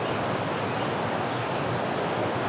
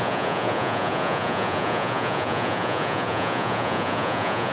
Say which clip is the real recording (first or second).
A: first